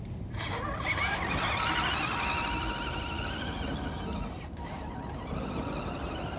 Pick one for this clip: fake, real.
real